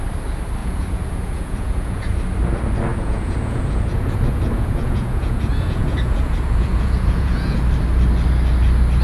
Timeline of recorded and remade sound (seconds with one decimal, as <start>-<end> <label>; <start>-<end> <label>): 0.0-0.6 recorded; 0.6-2.1 remade; 2.1-2.9 recorded; 2.9-7.6 remade; 7.6-9.0 recorded